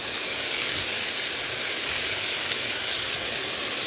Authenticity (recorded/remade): remade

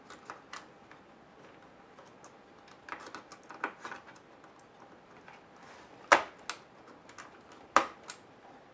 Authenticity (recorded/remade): recorded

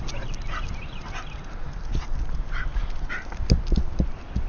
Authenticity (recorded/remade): recorded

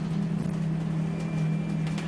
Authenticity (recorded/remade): recorded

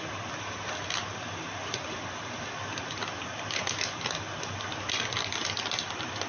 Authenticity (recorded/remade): recorded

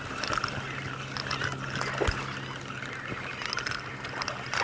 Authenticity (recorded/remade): recorded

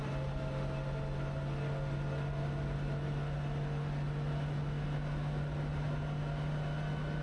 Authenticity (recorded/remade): recorded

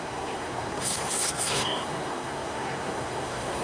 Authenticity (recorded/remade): remade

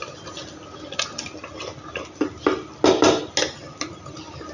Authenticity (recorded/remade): recorded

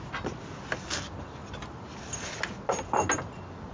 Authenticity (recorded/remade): recorded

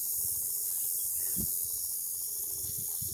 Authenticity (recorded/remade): recorded